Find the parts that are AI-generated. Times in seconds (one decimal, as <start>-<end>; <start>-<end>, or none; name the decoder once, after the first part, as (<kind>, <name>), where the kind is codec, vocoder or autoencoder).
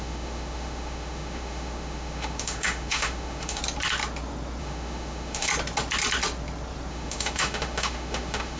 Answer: 0.0-3.6 (autoencoder, DAC-VAE); 4.6-5.5; 6.9-8.6